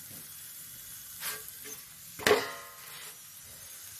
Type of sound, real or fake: real